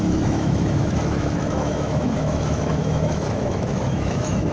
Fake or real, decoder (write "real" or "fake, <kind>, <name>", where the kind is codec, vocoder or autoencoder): fake, autoencoder, DAC-VAE